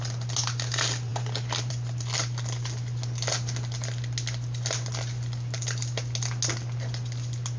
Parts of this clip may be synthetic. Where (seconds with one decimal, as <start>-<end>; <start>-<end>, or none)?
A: none